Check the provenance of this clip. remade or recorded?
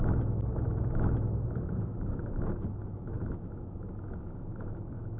remade